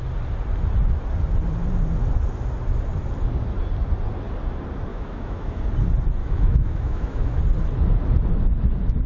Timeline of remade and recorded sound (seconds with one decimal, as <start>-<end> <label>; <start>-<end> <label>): 0.0-4.9 recorded; 4.9-5.7 remade; 5.7-6.2 recorded; 6.2-7.4 remade; 7.4-9.1 recorded